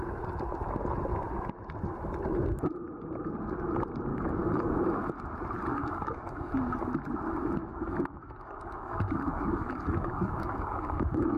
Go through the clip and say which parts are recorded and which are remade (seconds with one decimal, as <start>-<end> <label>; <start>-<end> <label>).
0.0-4.1 recorded; 4.1-4.7 remade; 4.7-5.7 recorded; 5.7-6.5 remade; 6.5-7.6 recorded; 7.6-11.4 remade